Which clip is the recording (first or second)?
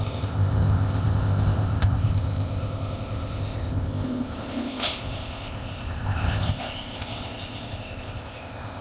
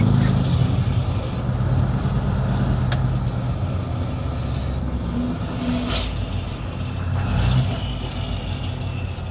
second